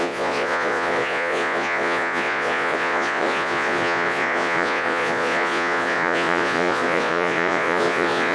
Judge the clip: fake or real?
fake